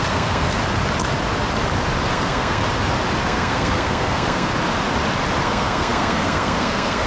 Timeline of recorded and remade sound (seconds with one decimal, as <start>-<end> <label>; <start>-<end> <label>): 0.0-0.6 remade; 0.6-2.1 recorded; 2.1-2.6 remade; 2.6-3.2 recorded; 3.2-4.5 remade; 4.5-5.4 recorded; 5.4-7.1 remade